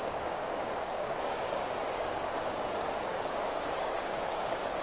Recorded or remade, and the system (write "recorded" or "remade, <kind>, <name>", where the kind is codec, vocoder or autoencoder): remade, codec, DAC